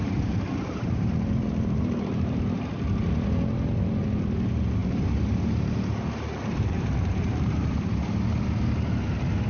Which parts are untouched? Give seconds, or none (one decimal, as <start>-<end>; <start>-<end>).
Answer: 2.4-4.8; 7.9-9.5